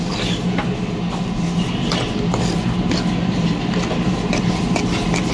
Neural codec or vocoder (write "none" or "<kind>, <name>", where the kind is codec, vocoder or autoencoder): none